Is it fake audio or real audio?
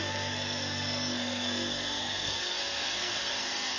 fake